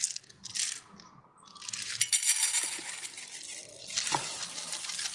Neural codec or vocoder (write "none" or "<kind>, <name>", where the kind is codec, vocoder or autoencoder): none